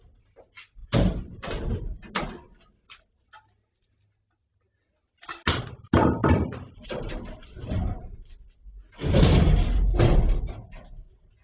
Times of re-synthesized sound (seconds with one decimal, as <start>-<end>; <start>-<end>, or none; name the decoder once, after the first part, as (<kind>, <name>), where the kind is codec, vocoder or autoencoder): none